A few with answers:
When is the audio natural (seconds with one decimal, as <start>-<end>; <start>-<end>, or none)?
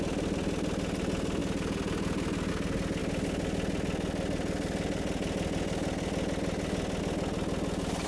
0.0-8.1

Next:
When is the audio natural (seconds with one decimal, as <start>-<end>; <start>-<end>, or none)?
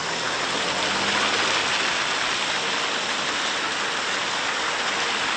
0.0-5.4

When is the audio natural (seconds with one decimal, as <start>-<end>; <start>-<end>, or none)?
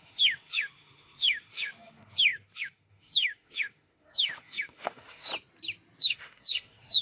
5.3-6.0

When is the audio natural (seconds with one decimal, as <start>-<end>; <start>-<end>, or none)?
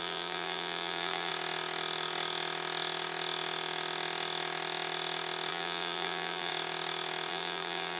1.3-5.5; 6.5-7.3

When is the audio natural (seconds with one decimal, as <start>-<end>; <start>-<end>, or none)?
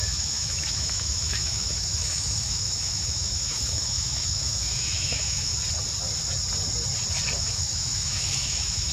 5.5-7.4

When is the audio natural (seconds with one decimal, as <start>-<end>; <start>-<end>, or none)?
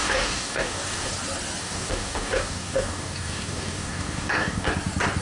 1.1-1.6; 4.7-5.2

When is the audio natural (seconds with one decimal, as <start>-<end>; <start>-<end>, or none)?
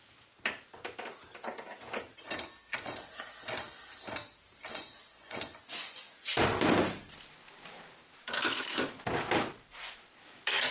0.0-4.7; 6.1-10.7